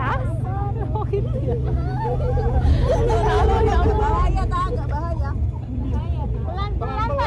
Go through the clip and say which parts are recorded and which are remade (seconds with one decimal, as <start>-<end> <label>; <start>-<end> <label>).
0.0-7.3 recorded